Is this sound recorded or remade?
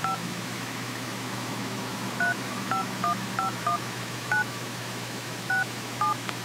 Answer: remade